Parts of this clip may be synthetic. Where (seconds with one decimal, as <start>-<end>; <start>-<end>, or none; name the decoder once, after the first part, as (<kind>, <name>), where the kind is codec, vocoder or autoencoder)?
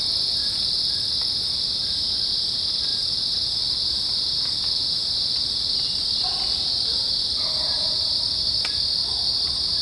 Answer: none